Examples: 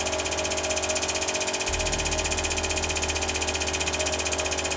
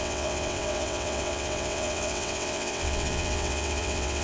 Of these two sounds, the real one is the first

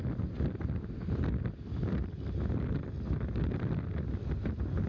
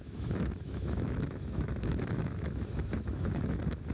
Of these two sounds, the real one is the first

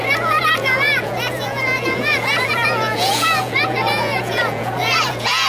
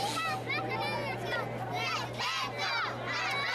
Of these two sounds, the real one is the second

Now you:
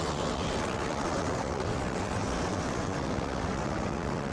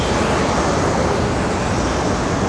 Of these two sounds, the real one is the second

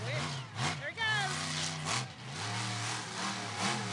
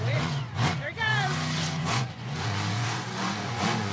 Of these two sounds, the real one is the first